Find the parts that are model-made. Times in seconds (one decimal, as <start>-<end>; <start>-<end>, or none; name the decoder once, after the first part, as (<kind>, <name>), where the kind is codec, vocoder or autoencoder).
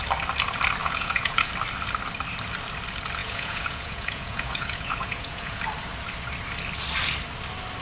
0.8-1.5 (vocoder, Vocos); 3.2-5.6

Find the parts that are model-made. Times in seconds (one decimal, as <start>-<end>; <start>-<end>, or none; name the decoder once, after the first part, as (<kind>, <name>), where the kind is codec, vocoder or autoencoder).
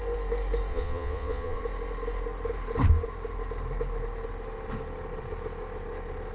0.7-1.6 (vocoder, Vocos)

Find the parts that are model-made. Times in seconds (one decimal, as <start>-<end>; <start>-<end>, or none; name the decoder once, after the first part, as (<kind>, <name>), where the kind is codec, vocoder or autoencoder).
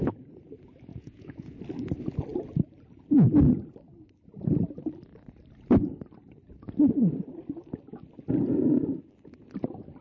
0.9-1.6 (vocoder, Vocos)